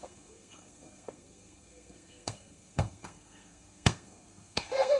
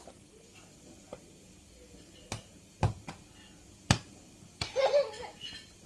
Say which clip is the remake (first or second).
first